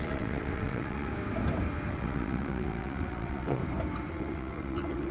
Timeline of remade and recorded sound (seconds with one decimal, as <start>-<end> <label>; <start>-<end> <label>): 0.0-1.1 remade; 1.1-1.9 recorded; 1.9-3.6 remade; 3.6-4.1 recorded; 4.1-5.1 remade